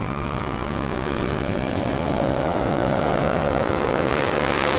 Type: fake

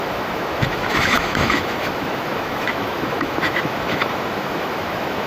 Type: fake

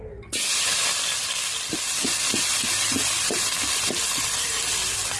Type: real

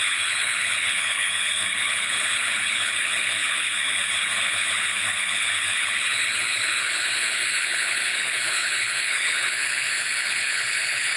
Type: fake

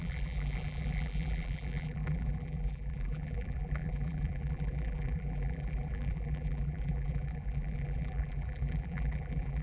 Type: fake